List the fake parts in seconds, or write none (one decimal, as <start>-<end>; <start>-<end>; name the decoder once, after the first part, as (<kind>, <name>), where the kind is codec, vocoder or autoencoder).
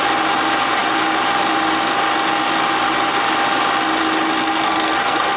4.4-5.4 (codec, SNAC)